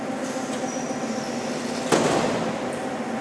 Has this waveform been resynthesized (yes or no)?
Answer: no